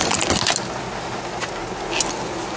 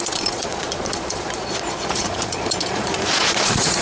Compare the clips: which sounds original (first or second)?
first